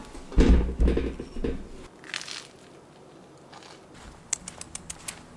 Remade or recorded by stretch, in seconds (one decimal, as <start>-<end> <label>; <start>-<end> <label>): 0.0-5.4 recorded